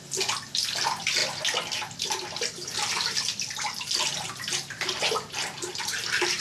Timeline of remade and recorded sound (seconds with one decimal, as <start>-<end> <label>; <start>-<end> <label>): 0.0-6.4 recorded